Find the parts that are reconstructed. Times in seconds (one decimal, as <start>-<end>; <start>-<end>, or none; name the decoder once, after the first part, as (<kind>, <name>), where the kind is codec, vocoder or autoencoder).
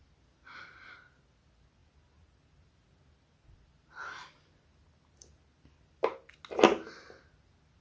none